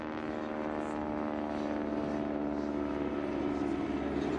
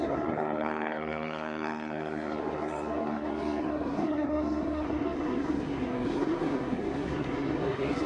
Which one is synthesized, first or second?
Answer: second